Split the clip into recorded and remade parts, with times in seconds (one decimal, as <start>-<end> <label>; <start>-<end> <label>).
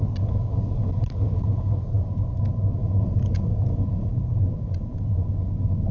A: 0.0-2.8 recorded; 2.8-4.1 remade; 4.1-5.9 recorded